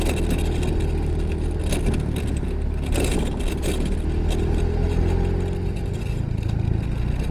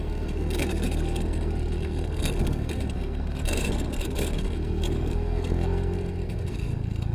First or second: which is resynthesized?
second